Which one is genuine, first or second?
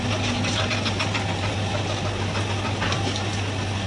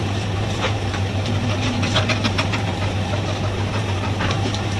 first